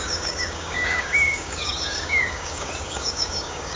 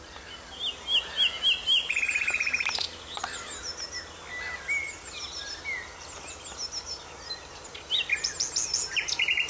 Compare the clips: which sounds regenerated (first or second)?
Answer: first